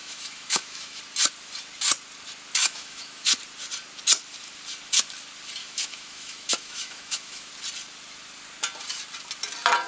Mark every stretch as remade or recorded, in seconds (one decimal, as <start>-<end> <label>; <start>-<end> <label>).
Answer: 0.0-1.0 remade; 1.0-2.6 recorded; 2.6-3.3 remade; 3.3-5.6 recorded; 5.6-7.5 remade; 7.5-9.9 recorded